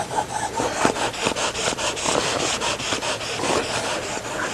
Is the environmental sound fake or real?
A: real